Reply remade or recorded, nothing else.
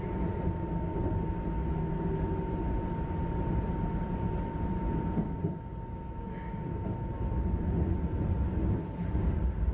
recorded